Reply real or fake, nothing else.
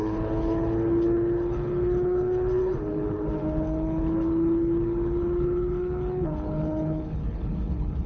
fake